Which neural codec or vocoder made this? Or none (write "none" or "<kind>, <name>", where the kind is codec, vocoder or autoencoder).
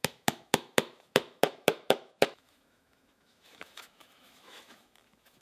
autoencoder, DAC-VAE